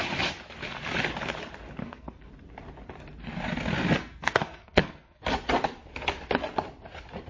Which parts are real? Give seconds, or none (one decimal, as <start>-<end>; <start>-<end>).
0.0-1.8; 2.3-4.0; 5.2-7.3